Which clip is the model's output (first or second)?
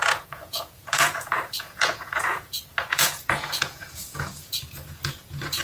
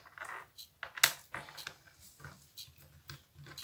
first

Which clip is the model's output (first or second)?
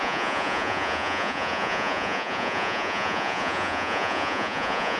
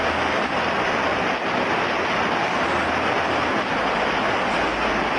first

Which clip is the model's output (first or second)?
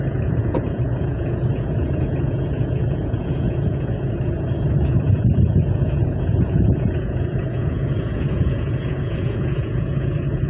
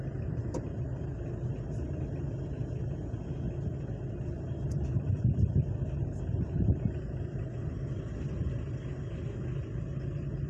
first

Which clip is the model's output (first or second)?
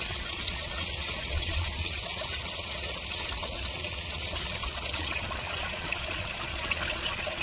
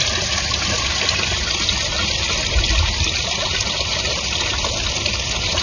first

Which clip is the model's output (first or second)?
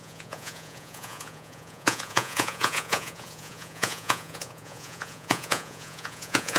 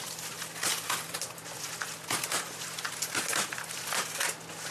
first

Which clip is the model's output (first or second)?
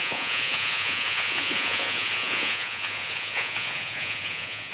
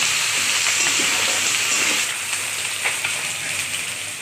first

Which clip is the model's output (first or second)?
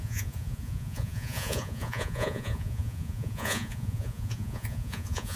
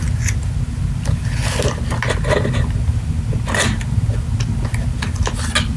first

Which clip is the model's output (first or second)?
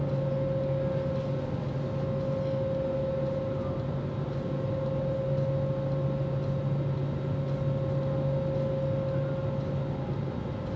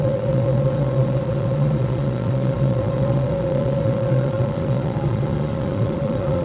second